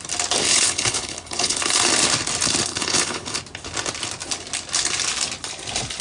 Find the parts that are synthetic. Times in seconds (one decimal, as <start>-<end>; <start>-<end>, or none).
0.5-1.6; 2.7-3.4